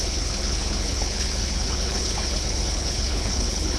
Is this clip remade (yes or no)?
yes